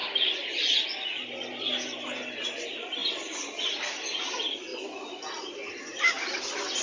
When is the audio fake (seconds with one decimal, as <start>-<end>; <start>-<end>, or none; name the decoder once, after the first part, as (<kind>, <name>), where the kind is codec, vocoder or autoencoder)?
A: none